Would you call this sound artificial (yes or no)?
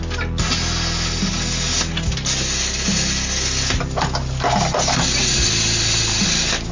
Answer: no